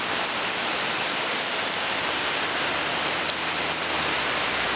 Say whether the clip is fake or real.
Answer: fake